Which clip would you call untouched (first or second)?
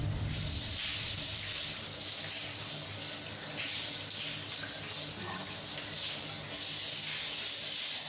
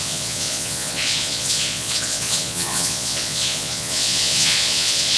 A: first